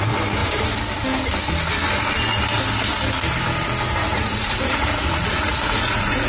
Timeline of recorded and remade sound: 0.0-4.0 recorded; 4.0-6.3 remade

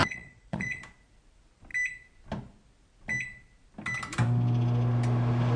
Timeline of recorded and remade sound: 0.0-0.8 remade; 0.8-5.6 recorded

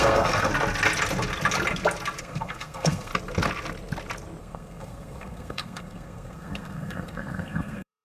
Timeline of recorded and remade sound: 0.0-0.5 remade; 0.5-2.2 recorded; 2.2-3.1 remade; 3.1-4.4 recorded; 4.4-8.0 remade

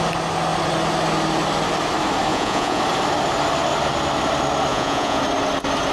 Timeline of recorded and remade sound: 0.0-2.3 recorded; 2.3-2.8 remade; 2.8-4.7 recorded; 4.7-5.2 remade; 5.2-5.9 recorded

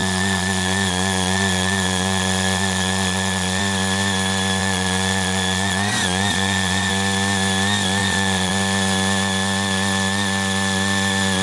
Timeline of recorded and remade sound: 0.0-3.6 remade; 3.6-4.6 recorded; 4.6-6.9 remade; 6.9-8.0 recorded; 8.0-8.5 remade; 8.5-11.4 recorded

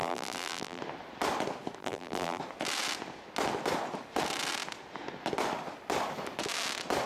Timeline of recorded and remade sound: 0.0-0.8 remade; 0.8-1.8 recorded; 1.8-2.4 remade; 2.4-7.1 recorded

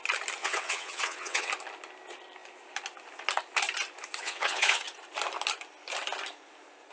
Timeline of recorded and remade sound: 0.0-0.4 recorded; 0.4-1.5 remade; 1.5-4.2 recorded; 4.2-4.8 remade; 4.8-6.9 recorded